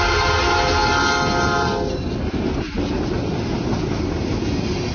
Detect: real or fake real